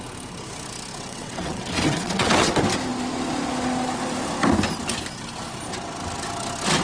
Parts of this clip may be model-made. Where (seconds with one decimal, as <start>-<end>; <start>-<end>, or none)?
0.9-2.5